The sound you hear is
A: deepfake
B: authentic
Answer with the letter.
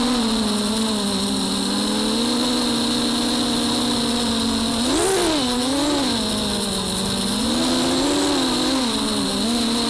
B